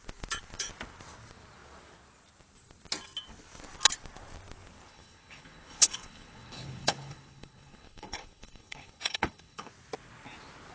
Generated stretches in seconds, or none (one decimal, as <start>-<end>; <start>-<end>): 4.9-9.7